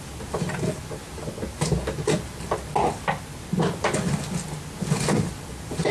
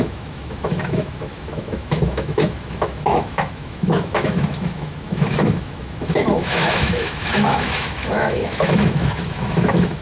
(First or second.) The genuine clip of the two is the first